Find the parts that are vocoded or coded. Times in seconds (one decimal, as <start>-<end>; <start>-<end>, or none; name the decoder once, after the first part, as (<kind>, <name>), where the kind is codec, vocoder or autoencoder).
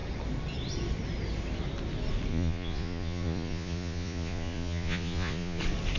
2.3-5.6 (vocoder, Vocos)